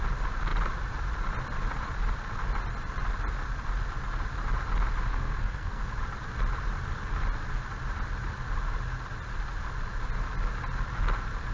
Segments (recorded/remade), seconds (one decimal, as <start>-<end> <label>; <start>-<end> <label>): 0.0-5.1 recorded; 5.1-5.8 remade; 5.8-11.5 recorded